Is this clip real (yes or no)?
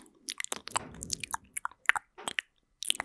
yes